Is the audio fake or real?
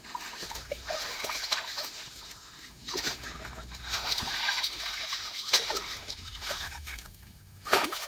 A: fake